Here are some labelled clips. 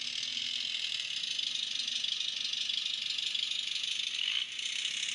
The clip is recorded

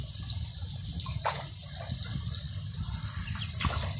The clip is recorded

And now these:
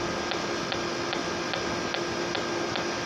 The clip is recorded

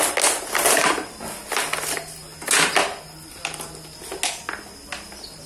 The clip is recorded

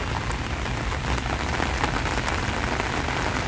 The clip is recorded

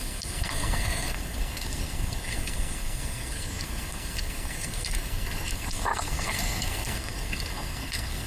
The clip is remade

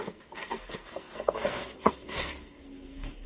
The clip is remade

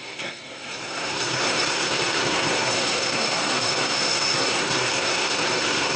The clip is remade